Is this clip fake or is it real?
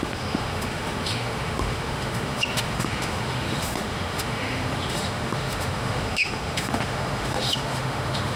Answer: fake